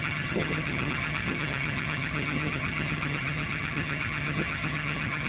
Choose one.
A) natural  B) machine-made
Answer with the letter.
B